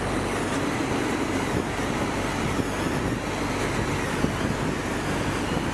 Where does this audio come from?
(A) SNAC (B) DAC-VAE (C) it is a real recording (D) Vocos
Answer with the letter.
C